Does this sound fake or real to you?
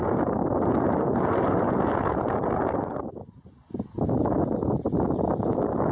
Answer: real